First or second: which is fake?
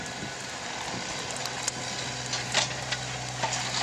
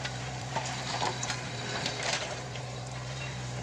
second